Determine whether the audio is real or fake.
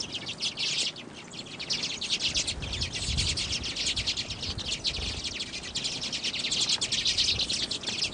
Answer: real